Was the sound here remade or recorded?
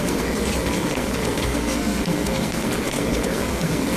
remade